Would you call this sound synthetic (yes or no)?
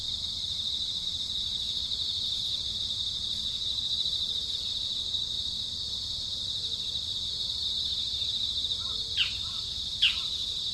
no